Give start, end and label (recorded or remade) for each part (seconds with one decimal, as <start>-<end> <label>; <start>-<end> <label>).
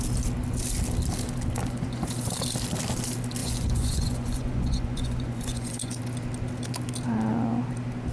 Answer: 0.0-1.6 recorded; 1.6-2.1 remade; 2.1-3.4 recorded; 3.4-6.0 remade; 6.0-8.1 recorded